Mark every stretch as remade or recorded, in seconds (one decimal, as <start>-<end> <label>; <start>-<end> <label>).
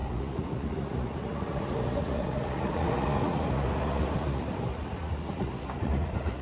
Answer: 0.0-6.4 remade